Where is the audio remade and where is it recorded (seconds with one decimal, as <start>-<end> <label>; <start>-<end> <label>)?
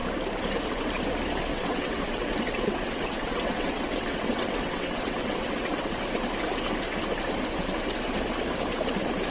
0.0-1.5 recorded; 1.5-5.9 remade; 5.9-9.3 recorded